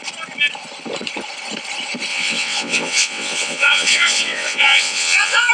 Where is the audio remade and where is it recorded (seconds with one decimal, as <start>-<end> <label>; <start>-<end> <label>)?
0.0-2.1 recorded; 2.1-5.5 remade